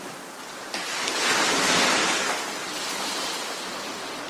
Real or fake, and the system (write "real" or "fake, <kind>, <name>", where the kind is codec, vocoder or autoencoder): real